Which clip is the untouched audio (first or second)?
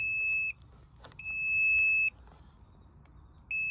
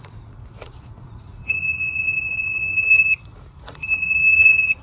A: first